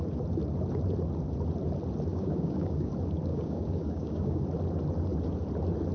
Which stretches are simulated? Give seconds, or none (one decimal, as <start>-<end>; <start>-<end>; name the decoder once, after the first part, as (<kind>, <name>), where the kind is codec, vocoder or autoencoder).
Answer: 2.1-2.9 (codec, DAC); 3.3-4.4